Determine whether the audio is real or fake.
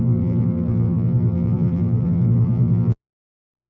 fake